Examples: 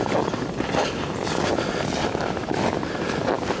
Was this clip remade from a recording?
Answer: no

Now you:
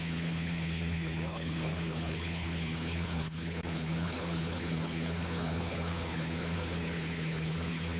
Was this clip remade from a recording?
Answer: yes